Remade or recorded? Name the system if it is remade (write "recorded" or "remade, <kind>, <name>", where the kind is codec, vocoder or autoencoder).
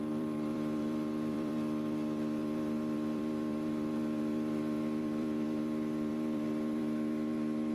remade, vocoder, BigVGAN v2